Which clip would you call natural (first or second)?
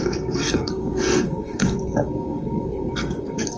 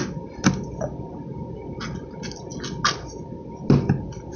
second